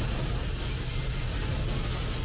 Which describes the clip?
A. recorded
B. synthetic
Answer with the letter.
A